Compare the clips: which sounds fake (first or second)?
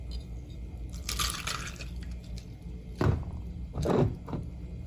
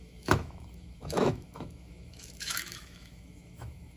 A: second